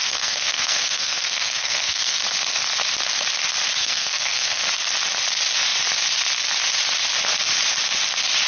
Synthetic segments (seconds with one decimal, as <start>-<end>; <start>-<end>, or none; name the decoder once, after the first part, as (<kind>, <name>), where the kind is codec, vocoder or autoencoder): 0.0-2.2 (codec, SNAC); 3.8-4.7